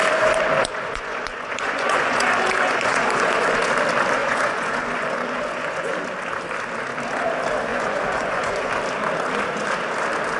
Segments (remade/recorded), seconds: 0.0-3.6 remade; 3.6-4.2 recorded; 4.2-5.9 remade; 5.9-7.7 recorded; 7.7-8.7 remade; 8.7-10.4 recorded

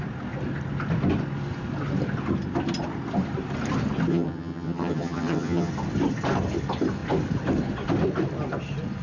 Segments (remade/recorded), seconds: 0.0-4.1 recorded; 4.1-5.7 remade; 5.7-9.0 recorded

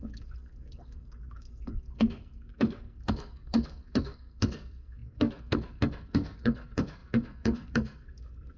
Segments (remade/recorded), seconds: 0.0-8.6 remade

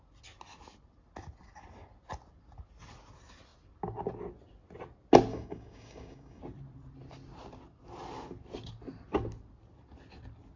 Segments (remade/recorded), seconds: 0.0-5.3 recorded; 5.3-6.4 remade; 6.4-10.6 recorded

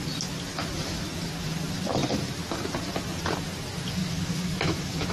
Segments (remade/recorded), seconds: 0.0-4.0 recorded; 4.0-5.1 remade

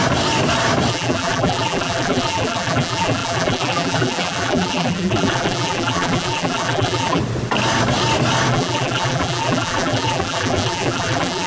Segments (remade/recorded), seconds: 0.0-0.9 recorded; 0.9-7.2 remade; 7.2-8.5 recorded; 8.5-11.5 remade

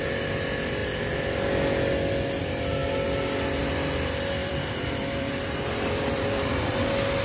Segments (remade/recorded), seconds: 0.0-4.4 recorded; 4.4-6.8 remade; 6.8-7.2 recorded

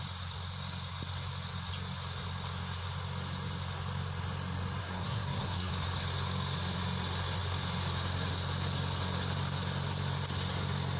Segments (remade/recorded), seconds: 0.0-4.8 recorded; 4.8-5.7 remade; 5.7-11.0 recorded